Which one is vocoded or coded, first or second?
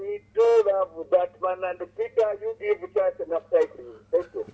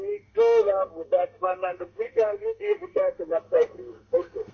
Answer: second